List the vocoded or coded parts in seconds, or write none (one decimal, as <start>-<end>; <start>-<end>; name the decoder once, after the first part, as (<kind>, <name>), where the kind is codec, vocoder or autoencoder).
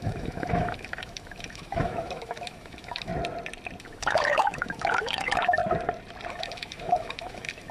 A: 0.0-3.1 (autoencoder, DAC-VAE); 3.8-5.6; 6.3-7.7